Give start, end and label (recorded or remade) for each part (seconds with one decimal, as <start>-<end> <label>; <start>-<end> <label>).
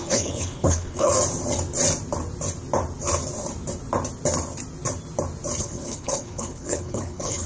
0.0-1.1 remade; 1.1-5.6 recorded; 5.6-7.5 remade